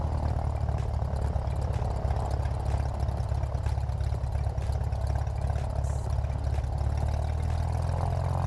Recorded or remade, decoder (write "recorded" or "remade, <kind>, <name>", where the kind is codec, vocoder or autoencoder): recorded